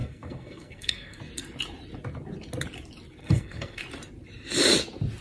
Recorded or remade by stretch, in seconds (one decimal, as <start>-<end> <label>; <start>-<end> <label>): 0.0-1.2 remade; 1.2-3.2 recorded; 3.2-3.8 remade; 3.8-5.2 recorded